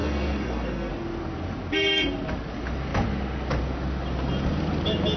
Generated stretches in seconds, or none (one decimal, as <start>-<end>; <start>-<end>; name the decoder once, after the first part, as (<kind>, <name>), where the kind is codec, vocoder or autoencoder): 0.0-0.9 (codec, SNAC)